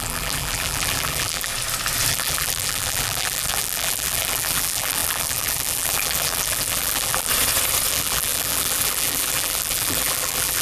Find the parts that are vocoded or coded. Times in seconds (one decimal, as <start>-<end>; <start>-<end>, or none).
0.0-1.5; 2.1-7.3; 7.9-10.6